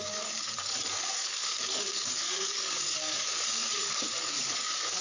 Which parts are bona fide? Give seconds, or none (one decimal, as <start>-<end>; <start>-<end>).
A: none